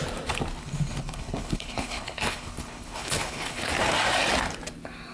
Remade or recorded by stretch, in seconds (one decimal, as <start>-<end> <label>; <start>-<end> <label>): 0.0-0.6 recorded; 0.6-3.7 remade; 3.7-5.1 recorded